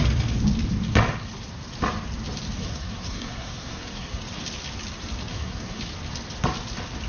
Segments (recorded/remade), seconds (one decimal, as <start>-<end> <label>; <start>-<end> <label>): 0.0-2.6 recorded; 2.6-4.2 remade; 4.2-5.3 recorded; 5.3-5.8 remade; 5.8-7.1 recorded